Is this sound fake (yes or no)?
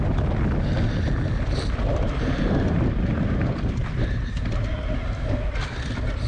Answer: no